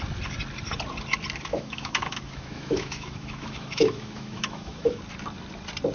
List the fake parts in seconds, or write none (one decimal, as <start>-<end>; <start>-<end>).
1.5-5.0